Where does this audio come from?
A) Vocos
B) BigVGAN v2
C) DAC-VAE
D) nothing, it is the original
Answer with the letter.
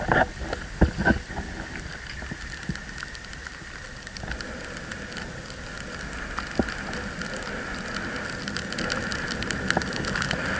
D